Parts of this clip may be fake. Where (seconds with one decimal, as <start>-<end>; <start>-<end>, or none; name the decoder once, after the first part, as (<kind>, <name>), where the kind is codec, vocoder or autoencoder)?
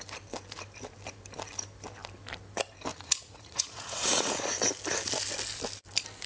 2.9-4.3 (vocoder, Vocos)